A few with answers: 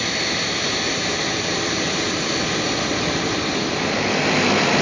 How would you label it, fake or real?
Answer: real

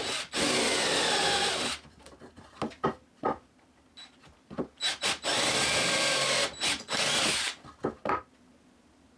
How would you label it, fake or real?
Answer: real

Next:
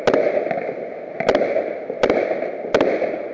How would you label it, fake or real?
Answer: real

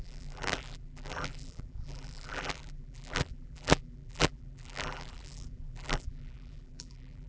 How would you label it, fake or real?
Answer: fake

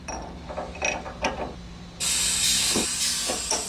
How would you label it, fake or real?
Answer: real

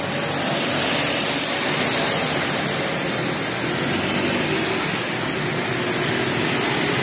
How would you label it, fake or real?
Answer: real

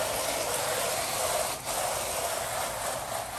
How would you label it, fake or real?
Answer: real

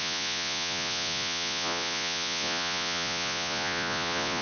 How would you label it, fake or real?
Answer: fake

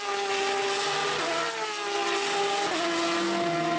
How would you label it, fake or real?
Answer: real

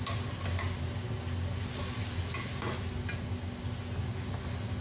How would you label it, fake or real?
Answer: real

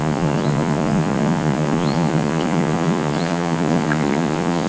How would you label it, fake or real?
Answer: fake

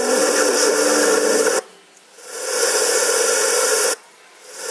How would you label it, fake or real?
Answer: real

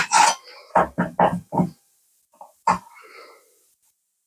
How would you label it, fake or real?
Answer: real